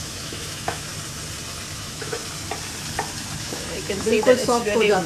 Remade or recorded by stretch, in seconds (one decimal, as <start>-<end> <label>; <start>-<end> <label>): 0.0-0.9 remade; 0.9-1.7 recorded; 1.7-2.2 remade; 2.2-3.4 recorded; 3.4-5.1 remade